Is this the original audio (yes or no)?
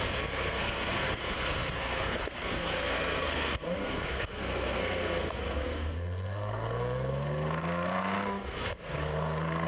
no